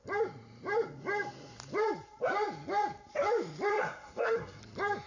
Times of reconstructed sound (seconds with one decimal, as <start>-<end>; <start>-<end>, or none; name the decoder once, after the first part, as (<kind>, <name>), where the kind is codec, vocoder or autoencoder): 3.7-4.6 (codec, SNAC)